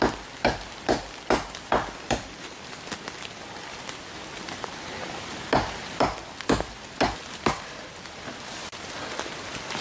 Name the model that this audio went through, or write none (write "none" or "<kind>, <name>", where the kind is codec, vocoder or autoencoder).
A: none